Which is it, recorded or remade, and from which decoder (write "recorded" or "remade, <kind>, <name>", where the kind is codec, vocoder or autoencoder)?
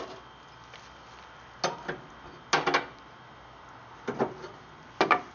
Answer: recorded